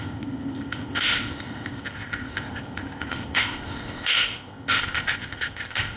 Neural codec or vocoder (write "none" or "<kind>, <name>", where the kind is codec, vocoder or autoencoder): codec, ZipCodec